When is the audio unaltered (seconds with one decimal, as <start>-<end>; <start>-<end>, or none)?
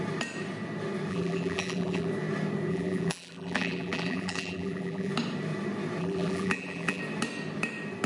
0.0-1.1; 2.1-2.7; 5.1-6.0; 7.0-8.1